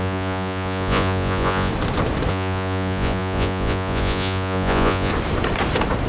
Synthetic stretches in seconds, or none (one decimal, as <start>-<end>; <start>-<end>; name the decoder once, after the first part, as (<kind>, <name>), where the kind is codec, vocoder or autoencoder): 0.0-1.7 (vocoder, Vocos); 2.3-5.1